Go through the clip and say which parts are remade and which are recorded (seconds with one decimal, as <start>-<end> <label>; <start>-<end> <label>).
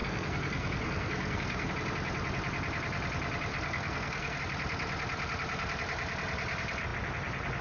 0.0-1.7 remade; 1.7-3.5 recorded; 3.5-4.4 remade; 4.4-7.6 recorded